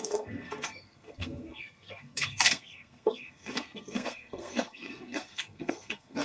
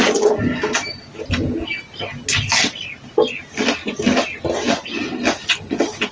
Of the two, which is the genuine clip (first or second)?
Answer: second